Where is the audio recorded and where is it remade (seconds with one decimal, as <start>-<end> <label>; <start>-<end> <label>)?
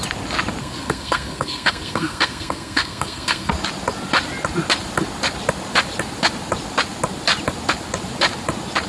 0.0-0.6 recorded; 0.6-3.5 remade; 3.5-8.9 recorded